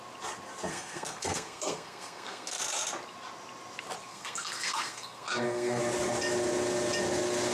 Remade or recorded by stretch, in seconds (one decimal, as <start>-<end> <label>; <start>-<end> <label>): 0.0-0.7 recorded; 0.7-2.6 remade; 2.6-4.1 recorded; 4.1-5.8 remade; 5.8-7.5 recorded